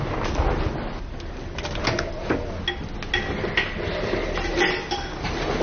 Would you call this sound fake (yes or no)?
no